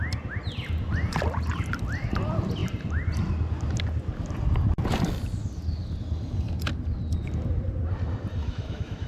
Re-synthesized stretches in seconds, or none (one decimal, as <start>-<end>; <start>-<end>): 8.4-9.1